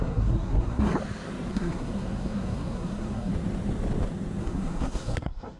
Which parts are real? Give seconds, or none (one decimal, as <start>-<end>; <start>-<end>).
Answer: 0.9-1.5; 3.3-4.4